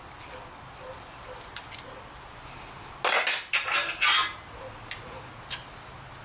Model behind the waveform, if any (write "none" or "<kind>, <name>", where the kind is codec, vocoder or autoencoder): none